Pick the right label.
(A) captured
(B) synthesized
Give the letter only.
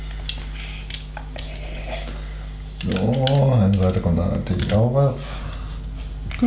A